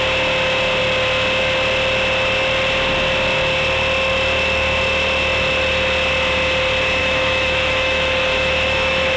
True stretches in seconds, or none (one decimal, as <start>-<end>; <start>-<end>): 0.0-7.0